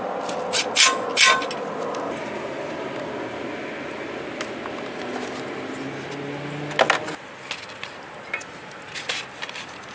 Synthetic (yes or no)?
no